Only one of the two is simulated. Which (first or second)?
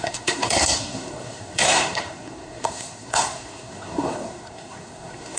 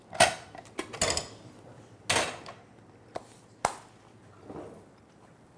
first